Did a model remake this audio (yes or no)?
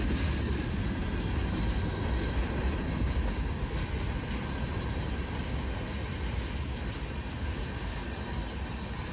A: no